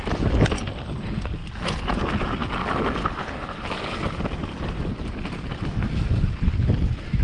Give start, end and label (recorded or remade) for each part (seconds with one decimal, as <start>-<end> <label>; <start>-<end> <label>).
0.0-7.2 recorded